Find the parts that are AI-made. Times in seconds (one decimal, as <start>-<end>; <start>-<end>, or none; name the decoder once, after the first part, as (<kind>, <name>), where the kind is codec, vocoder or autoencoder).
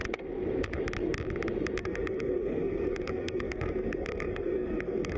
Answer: 1.8-5.2 (codec, SNAC)